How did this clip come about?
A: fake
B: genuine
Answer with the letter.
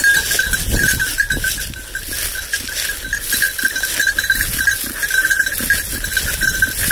B